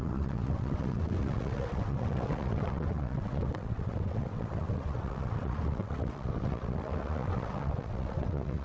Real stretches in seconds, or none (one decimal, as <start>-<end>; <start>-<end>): none